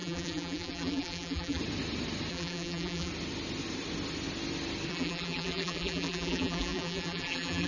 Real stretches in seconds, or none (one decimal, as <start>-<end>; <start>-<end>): 1.6-2.3; 3.1-4.9